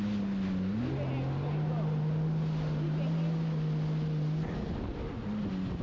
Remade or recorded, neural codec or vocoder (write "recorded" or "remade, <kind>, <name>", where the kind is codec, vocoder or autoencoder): recorded